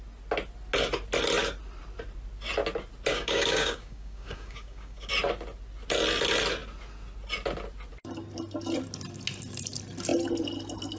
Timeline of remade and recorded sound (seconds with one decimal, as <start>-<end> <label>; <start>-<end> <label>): 0.0-3.1 recorded; 3.1-5.1 remade; 5.1-11.0 recorded

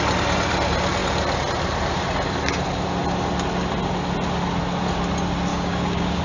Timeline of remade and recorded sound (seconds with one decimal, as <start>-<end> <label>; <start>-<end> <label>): 0.0-5.5 recorded; 5.5-6.2 remade

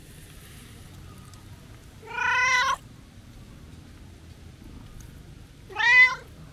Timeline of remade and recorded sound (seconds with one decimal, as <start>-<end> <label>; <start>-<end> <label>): 0.0-6.5 recorded

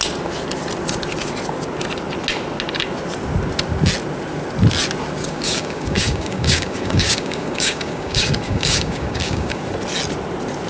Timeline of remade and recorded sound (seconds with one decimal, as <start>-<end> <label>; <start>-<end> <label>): 0.0-5.2 recorded; 5.2-9.6 remade; 9.6-10.7 recorded

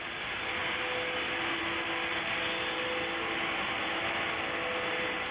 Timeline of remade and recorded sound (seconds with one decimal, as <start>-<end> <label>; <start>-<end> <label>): 0.0-5.3 recorded

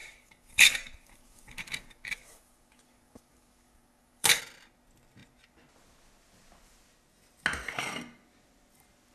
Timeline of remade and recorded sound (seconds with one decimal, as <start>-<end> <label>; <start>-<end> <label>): 0.0-4.4 remade; 4.4-9.1 recorded

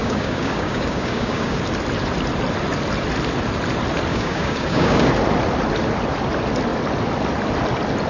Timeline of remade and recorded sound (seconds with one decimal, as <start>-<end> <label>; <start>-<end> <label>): 0.0-1.6 remade; 1.6-4.1 recorded; 4.1-5.1 remade; 5.1-8.1 recorded

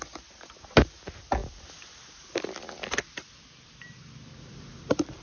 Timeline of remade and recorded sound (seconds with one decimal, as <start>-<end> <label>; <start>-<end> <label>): 0.0-5.2 recorded